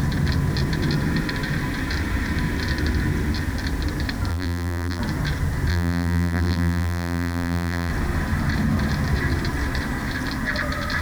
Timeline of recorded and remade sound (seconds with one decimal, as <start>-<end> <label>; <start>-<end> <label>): 0.0-4.3 recorded; 4.3-5.0 remade; 5.0-5.7 recorded; 5.7-7.9 remade; 7.9-11.0 recorded